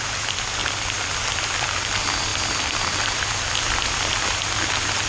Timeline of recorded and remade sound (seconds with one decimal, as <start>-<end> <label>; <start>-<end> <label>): 0.0-0.6 remade; 0.6-1.7 recorded; 1.7-5.1 remade

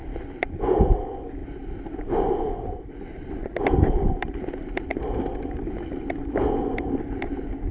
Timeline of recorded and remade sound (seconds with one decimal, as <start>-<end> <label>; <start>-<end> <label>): 0.0-7.7 recorded

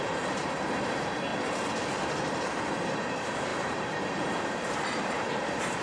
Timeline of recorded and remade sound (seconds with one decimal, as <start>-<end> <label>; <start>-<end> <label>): 0.0-1.3 remade; 1.3-2.3 recorded; 2.3-5.8 remade